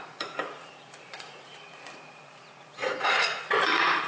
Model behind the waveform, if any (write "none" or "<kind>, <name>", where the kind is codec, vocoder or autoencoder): vocoder, Vocos